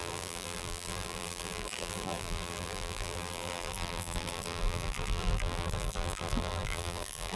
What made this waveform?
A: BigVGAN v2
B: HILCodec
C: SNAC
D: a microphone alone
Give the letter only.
A